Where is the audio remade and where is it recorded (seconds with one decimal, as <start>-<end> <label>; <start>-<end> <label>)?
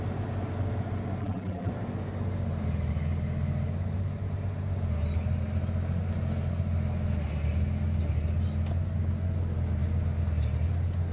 0.0-1.2 recorded; 1.2-1.7 remade; 1.7-11.1 recorded